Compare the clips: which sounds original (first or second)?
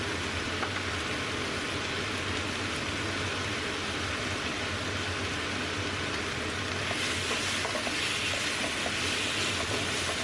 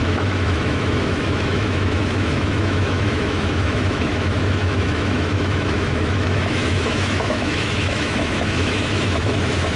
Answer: first